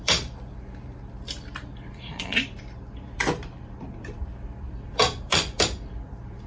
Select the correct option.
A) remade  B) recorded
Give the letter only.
A